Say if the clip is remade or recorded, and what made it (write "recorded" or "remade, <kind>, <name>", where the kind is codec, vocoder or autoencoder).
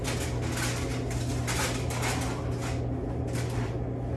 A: recorded